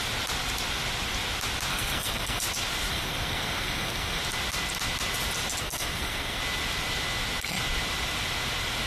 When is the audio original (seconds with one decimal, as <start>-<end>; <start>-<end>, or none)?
0.0-1.7; 2.4-2.9; 4.2-5.6; 6.4-8.9